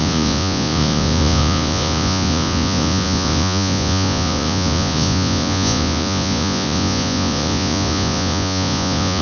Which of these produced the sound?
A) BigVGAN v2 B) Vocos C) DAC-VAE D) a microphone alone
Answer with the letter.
B